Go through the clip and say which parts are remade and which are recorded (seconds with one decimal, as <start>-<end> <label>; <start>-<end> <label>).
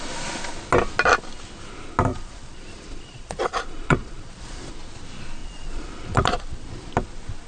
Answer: 0.0-2.1 recorded; 2.1-4.7 remade; 4.7-5.4 recorded; 5.4-6.9 remade; 6.9-7.5 recorded